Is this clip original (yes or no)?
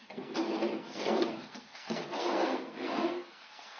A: no